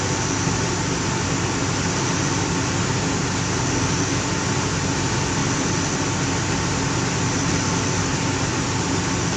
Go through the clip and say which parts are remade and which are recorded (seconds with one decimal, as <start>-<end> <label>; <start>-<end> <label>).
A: 0.0-9.4 recorded